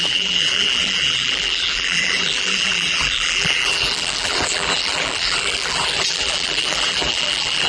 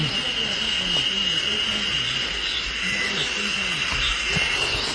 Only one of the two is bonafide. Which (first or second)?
second